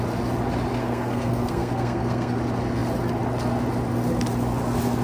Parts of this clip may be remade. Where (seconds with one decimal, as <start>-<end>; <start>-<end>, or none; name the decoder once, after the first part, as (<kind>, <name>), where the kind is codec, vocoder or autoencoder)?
0.8-2.4 (codec, SNAC)